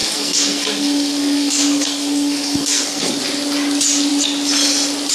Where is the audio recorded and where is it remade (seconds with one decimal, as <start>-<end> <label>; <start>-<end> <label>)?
0.0-3.1 remade; 3.1-5.1 recorded